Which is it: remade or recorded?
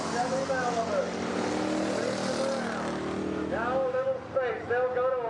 recorded